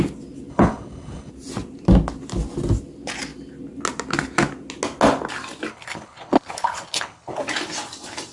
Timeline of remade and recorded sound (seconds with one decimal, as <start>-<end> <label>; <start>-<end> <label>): 0.0-0.5 recorded; 0.5-1.3 remade; 1.3-5.7 recorded; 5.7-7.4 remade; 7.4-8.3 recorded